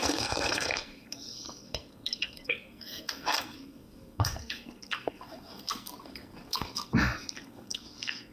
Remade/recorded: remade